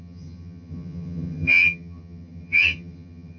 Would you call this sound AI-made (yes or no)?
yes